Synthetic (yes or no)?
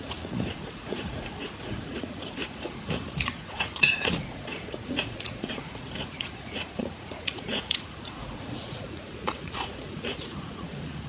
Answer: yes